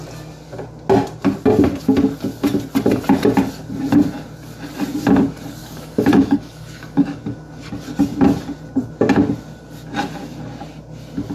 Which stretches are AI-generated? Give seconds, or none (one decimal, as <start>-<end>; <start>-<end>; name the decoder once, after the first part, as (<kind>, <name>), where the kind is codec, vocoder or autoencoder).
5.6-7.7 (codec, DAC)